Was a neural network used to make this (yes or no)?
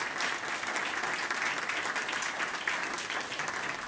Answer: no